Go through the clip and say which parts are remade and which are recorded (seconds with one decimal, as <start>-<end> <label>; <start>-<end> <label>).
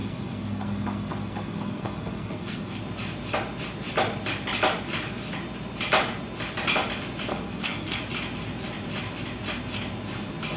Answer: 0.0-2.8 remade; 2.8-7.3 recorded; 7.3-8.0 remade; 8.0-10.6 recorded